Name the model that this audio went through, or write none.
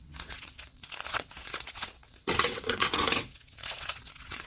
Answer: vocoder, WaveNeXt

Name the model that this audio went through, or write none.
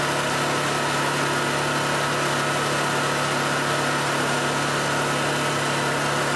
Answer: none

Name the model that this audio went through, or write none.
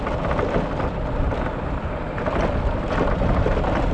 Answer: none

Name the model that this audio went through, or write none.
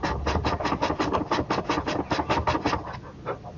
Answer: none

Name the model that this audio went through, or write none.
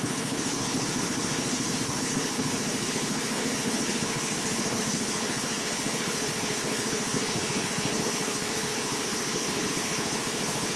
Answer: codec, HILCodec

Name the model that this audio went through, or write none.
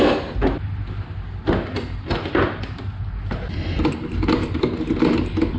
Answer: none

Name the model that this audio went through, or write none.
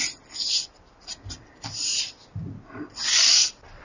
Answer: none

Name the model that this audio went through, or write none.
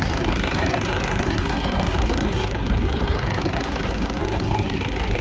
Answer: codec, SNAC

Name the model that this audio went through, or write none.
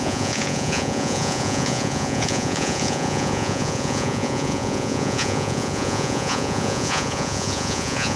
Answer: vocoder, Vocos